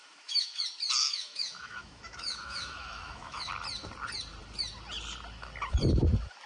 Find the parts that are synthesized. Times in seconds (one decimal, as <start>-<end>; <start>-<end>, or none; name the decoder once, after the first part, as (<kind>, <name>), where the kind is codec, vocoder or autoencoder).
0.0-0.6 (autoencoder, DAC-VAE); 1.0-3.5